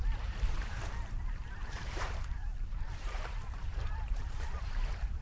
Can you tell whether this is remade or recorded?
remade